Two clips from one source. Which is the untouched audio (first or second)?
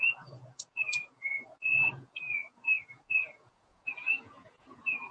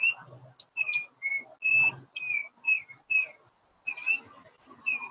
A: second